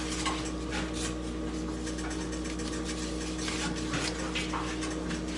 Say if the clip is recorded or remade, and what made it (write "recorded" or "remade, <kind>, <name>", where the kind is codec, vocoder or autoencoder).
recorded